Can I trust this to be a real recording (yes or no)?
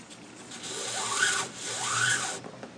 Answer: yes